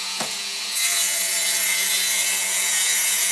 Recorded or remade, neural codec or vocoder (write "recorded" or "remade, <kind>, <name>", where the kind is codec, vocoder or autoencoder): remade, vocoder, Vocos